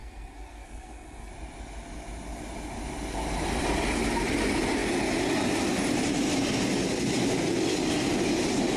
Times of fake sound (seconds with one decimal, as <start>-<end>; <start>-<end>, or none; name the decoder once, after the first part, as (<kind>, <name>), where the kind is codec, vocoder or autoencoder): 0.0-1.3 (codec, SNAC)